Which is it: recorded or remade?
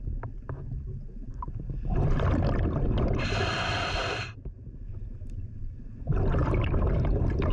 recorded